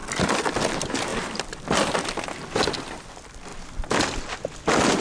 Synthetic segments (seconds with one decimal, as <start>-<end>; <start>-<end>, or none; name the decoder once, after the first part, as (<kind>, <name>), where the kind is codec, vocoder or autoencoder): none

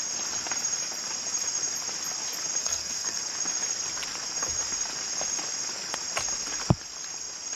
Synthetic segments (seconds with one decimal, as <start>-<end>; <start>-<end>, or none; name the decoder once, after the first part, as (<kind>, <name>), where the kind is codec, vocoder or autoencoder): 2.6-3.2 (codec, SNAC)

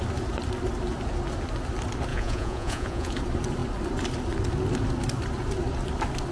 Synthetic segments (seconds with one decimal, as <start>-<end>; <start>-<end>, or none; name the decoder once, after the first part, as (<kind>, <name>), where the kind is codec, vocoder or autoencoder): 2.1-3.1 (vocoder, Vocos)

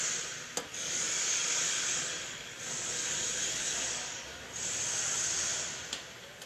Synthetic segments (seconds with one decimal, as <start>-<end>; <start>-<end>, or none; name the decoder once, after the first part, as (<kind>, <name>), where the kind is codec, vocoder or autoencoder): 0.7-4.4 (codec, DAC)

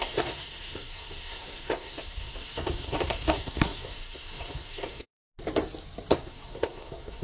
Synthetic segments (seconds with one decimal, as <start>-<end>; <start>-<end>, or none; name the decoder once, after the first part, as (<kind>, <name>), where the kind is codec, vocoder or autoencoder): 0.0-5.2 (codec, SNAC); 6.1-7.2

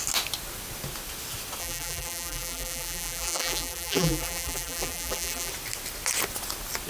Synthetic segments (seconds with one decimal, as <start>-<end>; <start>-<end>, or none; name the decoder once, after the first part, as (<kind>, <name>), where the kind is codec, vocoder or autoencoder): 1.6-5.5 (vocoder, BigVGAN v2)